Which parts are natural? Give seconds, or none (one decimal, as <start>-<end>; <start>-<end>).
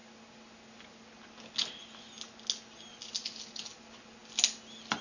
0.0-5.0